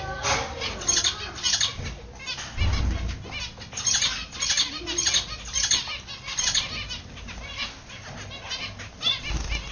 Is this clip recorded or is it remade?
recorded